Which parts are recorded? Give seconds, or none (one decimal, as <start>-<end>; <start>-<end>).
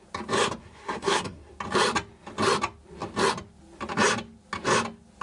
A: 0.0-0.6; 1.5-5.2